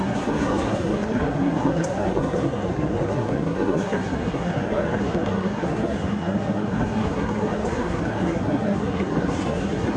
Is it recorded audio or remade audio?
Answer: remade